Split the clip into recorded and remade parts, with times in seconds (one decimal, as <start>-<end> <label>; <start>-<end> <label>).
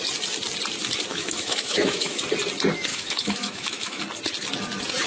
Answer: 0.0-1.1 recorded; 1.1-2.2 remade; 2.2-2.9 recorded; 2.9-4.0 remade; 4.0-5.1 recorded